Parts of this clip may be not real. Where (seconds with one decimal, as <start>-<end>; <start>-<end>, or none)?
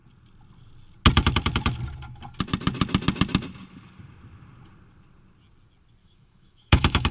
6.0-7.1